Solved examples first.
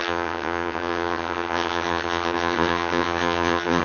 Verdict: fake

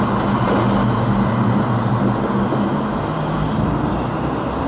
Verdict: real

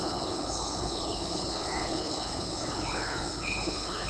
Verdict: fake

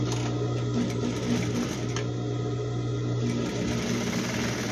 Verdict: real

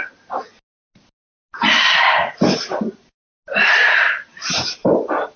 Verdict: real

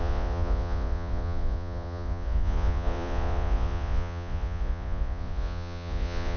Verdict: fake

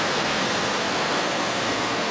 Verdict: fake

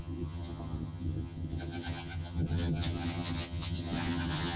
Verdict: fake